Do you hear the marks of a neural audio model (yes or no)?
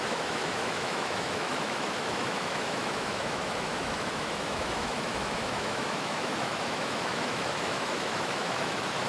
yes